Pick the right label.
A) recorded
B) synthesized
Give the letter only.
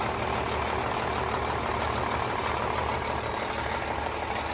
A